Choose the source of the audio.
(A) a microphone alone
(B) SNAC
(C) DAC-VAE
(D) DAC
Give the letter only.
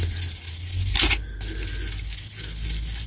A